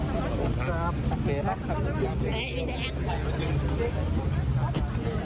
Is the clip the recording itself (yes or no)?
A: yes